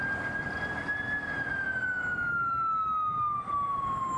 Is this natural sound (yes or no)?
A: yes